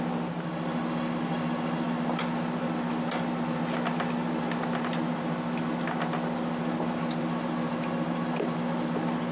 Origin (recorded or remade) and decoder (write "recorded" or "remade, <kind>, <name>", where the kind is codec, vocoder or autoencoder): recorded